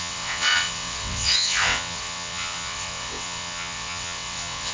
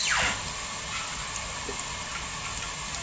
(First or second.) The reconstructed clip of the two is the first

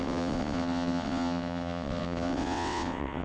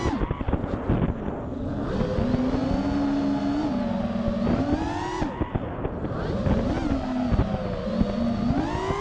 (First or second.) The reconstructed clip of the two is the first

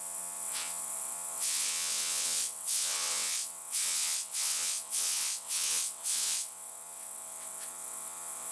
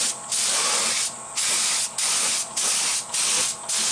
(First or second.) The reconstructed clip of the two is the first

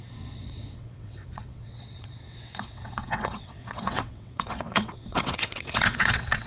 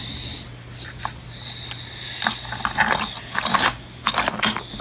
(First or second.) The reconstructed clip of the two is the first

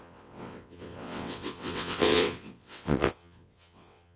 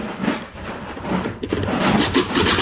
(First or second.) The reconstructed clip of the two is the first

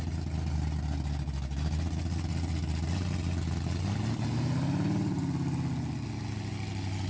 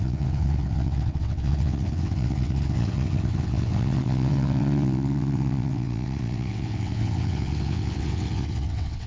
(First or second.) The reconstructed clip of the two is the second